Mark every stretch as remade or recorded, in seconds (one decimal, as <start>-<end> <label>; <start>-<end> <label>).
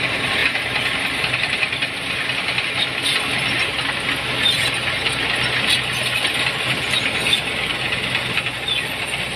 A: 0.0-9.4 recorded